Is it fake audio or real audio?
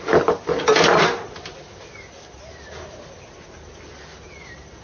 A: real